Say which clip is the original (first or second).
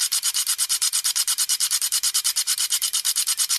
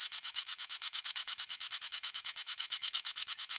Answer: first